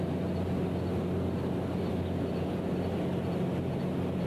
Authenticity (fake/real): real